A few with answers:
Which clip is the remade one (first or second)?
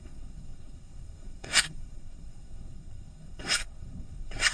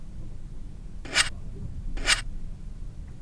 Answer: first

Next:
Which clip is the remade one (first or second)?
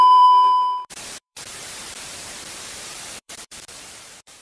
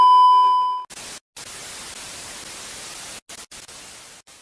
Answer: first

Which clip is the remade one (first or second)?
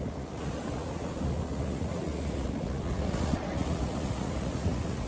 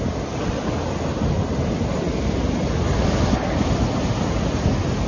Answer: first